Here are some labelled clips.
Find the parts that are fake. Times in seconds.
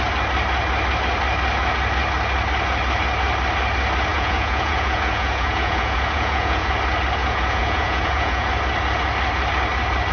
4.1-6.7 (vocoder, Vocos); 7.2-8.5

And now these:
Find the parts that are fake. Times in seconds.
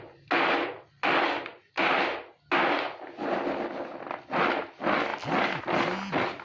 none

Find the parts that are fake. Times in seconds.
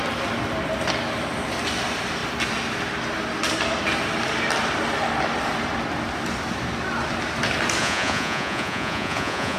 7.8-9.6 (vocoder, Vocos)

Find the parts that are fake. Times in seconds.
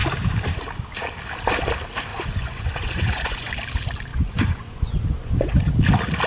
2.1-3.5 (vocoder, Vocos); 4.1-5.7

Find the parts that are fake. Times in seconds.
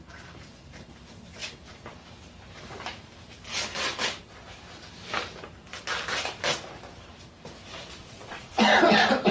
8.0-8.5 (vocoder, Vocos)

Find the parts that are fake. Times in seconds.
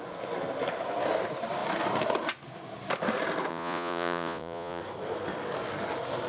3.5-4.8 (vocoder, Vocos)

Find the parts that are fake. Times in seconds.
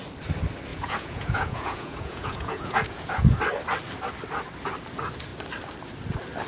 0.7-3.4 (vocoder, Vocos)